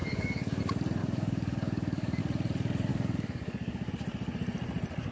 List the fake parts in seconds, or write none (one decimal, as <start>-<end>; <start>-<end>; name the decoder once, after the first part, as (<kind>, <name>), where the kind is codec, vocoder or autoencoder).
0.0-0.6 (codec, DAC); 1.0-2.2; 2.9-3.9